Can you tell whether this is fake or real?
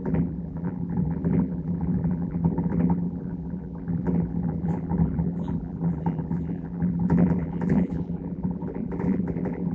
fake